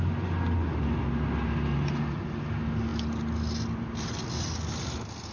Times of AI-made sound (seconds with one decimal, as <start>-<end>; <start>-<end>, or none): none